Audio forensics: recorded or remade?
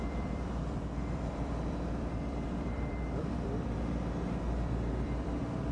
remade